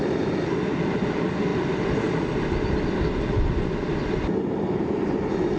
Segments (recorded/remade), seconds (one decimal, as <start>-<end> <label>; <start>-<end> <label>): 0.0-5.6 recorded